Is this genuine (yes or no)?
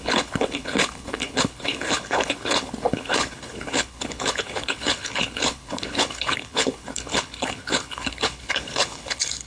no